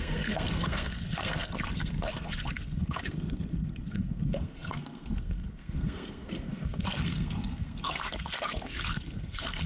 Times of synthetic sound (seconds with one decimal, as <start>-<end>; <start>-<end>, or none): 0.0-9.7